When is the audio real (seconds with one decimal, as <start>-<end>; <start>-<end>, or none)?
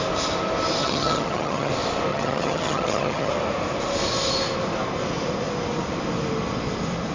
0.0-0.8; 1.7-2.1; 3.3-7.1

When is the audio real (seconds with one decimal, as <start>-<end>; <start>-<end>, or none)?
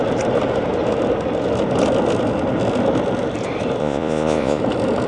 0.0-3.8; 4.6-5.1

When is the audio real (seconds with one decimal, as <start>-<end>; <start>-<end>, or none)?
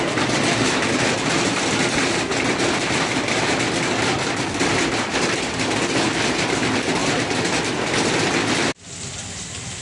0.0-9.8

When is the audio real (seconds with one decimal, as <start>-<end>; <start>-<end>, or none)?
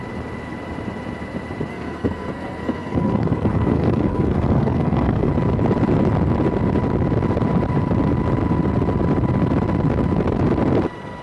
0.0-1.7; 5.3-11.2